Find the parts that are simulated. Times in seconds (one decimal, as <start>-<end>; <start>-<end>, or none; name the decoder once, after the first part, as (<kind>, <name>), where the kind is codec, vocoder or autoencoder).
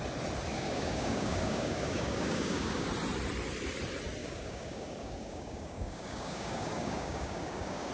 0.5-2.9 (codec, DAC); 4.2-7.9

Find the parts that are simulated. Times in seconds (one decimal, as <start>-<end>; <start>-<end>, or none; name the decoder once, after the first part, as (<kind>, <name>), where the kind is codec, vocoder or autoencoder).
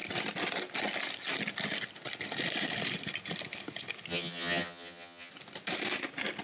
4.1-5.3 (vocoder, HiFi-GAN)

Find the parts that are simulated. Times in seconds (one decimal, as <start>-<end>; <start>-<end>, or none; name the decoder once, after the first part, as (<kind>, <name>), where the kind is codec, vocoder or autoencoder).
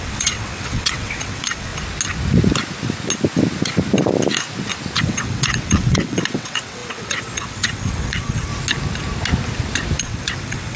0.0-1.7 (vocoder, WaveNeXt); 5.0-8.5; 10.0-10.8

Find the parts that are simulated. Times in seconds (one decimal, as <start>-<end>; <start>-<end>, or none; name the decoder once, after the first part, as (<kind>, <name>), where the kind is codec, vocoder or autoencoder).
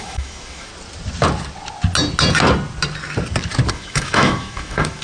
0.0-0.7 (autoencoder, DAC-VAE); 3.7-5.0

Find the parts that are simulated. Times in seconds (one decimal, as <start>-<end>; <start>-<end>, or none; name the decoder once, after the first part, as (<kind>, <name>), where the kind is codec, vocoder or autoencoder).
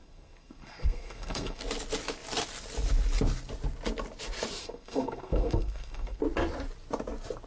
0.0-1.6 (codec, SNAC); 4.6-6.2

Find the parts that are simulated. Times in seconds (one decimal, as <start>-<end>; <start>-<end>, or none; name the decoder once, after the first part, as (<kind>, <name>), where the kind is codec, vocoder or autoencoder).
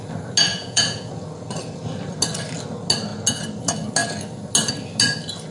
0.5-1.1 (vocoder, Vocos)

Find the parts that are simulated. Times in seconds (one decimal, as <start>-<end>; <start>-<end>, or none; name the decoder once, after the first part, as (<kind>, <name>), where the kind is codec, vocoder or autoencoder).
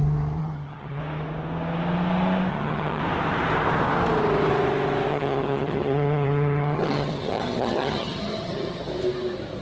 0.4-1.0 (vocoder, HiFi-GAN); 2.5-3.0; 5.1-8.9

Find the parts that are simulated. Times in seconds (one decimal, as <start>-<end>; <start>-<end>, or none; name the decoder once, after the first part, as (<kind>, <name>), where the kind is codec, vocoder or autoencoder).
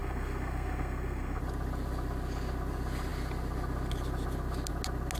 0.0-1.4 (codec, SNAC)